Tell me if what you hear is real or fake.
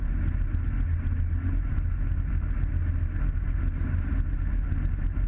real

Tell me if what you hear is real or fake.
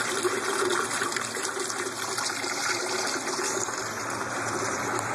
real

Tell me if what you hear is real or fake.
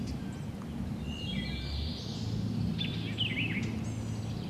real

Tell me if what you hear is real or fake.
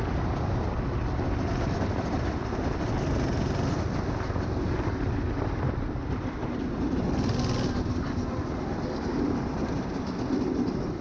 real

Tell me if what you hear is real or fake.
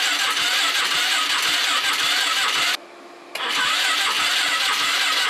real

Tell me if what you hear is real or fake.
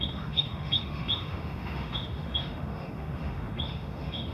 fake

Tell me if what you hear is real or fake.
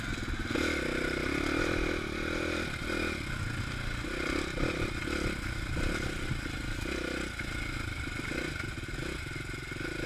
real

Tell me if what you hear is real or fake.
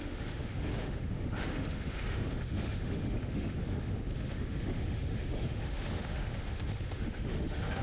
fake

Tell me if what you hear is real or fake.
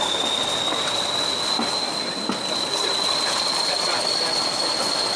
real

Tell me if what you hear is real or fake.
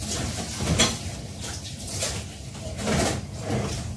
real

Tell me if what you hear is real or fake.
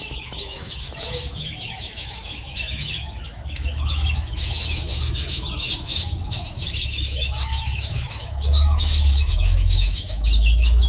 fake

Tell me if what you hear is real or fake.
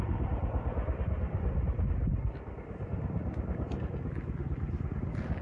real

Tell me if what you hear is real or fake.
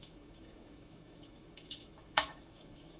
fake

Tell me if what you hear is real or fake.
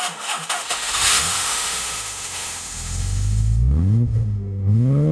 fake